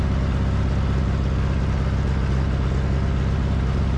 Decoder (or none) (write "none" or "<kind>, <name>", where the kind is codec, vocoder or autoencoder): none